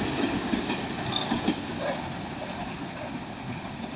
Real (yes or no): yes